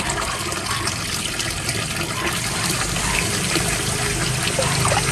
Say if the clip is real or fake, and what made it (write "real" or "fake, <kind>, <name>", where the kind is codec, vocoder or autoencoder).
fake, vocoder, BigVGAN v2